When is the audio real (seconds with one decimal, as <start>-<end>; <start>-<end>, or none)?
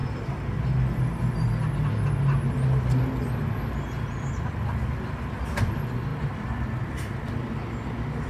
0.0-6.1; 6.9-8.3